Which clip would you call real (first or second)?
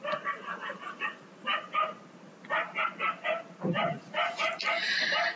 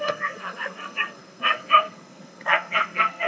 first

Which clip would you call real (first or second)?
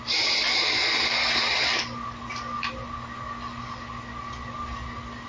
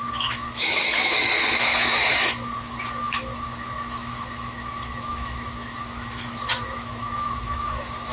first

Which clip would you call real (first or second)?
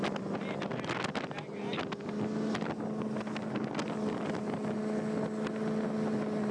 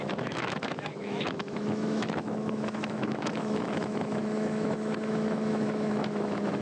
first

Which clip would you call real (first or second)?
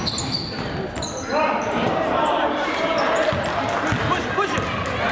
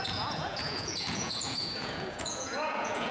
first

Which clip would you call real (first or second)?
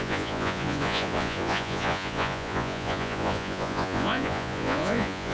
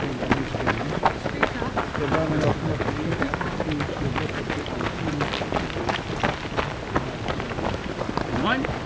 second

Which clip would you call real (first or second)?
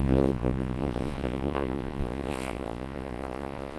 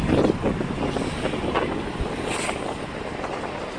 second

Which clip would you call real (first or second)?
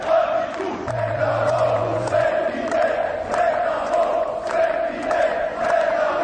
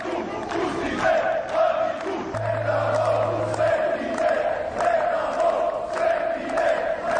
second